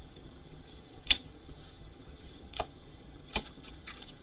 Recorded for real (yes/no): no